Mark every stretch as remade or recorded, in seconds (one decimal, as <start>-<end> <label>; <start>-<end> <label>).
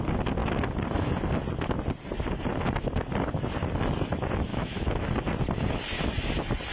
0.0-4.5 recorded; 4.5-5.1 remade; 5.1-6.7 recorded